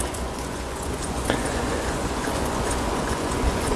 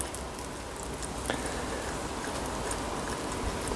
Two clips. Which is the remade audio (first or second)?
first